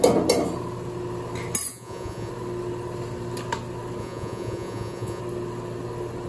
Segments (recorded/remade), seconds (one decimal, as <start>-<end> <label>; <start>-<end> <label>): 0.0-1.7 recorded; 1.7-2.3 remade; 2.3-4.0 recorded; 4.0-5.2 remade; 5.2-6.3 recorded